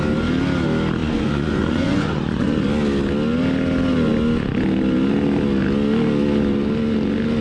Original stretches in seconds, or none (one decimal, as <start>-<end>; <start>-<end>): 0.0-1.0; 2.6-7.4